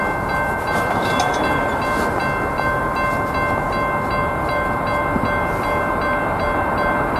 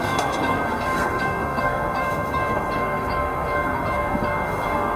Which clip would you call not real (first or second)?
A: second